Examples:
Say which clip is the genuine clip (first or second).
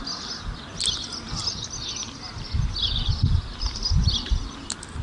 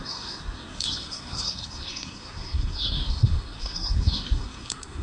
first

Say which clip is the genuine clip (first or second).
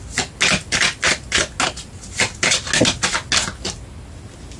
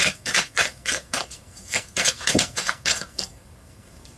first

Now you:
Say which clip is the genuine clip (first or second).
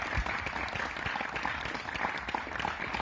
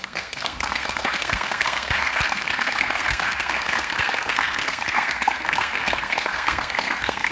first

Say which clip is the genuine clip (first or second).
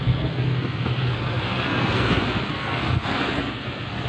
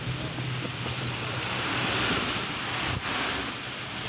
second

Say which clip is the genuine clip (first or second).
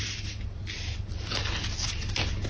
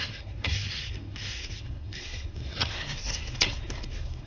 first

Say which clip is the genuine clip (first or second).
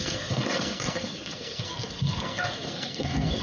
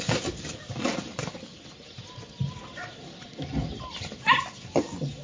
second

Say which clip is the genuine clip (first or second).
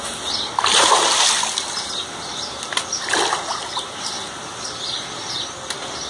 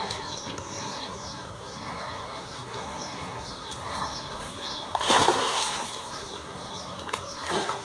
first